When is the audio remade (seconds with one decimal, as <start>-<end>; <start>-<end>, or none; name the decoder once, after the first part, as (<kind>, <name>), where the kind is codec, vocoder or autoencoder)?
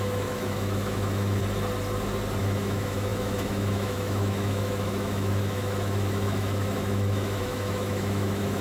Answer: 0.0-1.4 (autoencoder, DAC-VAE); 2.4-8.6